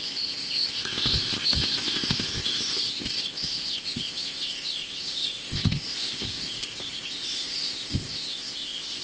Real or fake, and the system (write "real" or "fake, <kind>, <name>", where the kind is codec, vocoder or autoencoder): fake, codec, ZipCodec